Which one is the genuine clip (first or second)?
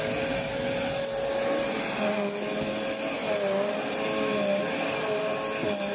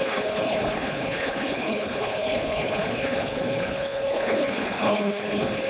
first